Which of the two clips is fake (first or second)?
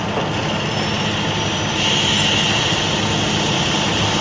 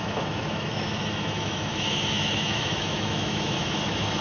second